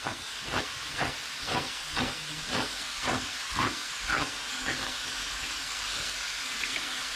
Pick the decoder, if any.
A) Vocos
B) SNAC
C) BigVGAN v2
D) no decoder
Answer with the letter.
B